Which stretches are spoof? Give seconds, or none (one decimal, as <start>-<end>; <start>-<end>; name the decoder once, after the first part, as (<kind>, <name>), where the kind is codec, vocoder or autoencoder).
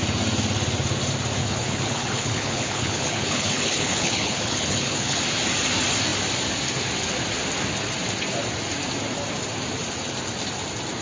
1.4-5.2 (codec, HILCodec)